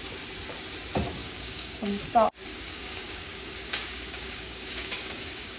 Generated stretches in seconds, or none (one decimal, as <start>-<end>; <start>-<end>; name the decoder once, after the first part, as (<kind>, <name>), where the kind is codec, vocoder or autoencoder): 1.2-2.0 (codec, DAC); 2.5-5.6